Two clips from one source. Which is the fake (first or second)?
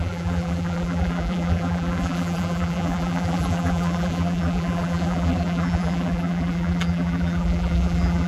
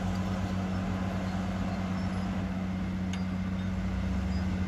first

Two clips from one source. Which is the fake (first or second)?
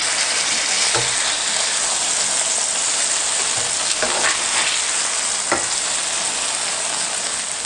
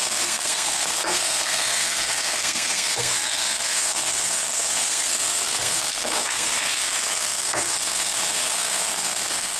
second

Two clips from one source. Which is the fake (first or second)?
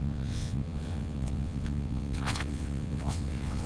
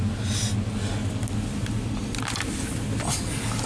first